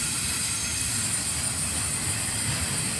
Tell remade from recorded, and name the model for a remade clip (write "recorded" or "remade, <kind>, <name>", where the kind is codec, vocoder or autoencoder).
remade, vocoder, BigVGAN v2